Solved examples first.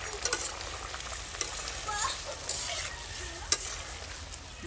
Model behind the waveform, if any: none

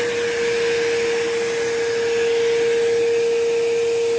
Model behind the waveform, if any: none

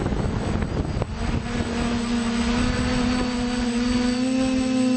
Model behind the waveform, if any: none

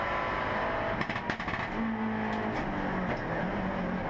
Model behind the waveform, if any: none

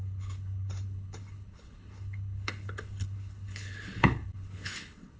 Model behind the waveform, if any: codec, HILCodec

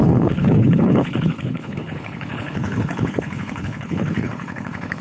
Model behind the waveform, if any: codec, HILCodec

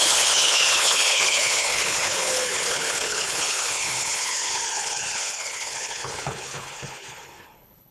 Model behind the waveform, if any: codec, HILCodec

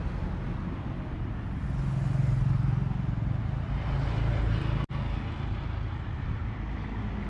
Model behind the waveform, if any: none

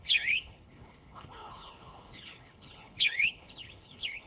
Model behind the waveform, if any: codec, HILCodec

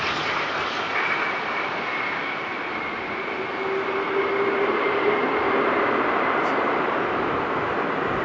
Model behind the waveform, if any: none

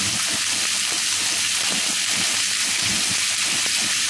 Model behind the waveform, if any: none